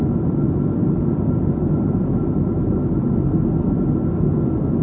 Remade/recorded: recorded